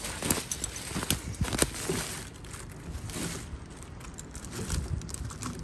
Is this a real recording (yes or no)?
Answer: yes